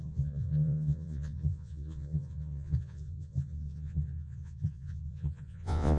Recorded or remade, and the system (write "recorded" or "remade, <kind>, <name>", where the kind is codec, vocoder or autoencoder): remade, vocoder, Vocos